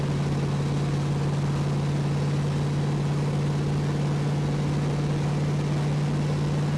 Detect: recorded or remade recorded